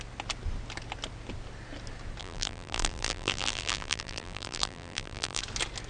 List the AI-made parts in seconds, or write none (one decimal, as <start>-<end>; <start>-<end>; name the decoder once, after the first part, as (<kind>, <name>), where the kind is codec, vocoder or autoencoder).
2.2-5.4 (vocoder, BigVGAN v2)